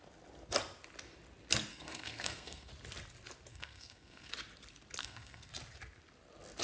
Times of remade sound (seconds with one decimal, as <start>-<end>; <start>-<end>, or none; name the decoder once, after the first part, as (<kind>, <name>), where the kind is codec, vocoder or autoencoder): 1.7-2.7 (codec, SNAC); 3.5-4.3; 5.0-5.5